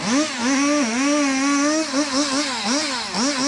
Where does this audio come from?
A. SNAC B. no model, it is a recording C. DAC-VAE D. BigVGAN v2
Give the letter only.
B